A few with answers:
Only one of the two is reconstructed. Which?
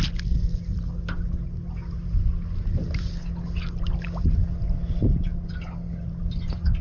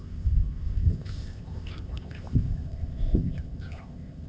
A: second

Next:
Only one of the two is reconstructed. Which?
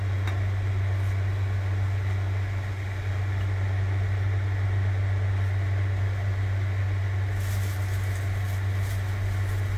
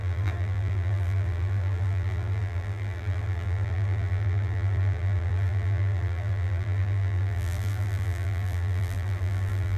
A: second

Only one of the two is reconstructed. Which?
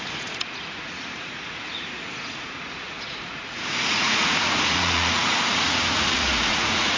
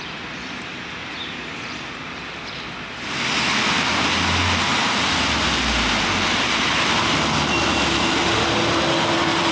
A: first